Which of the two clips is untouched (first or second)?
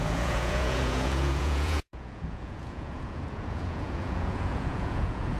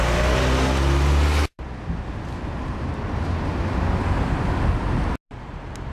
second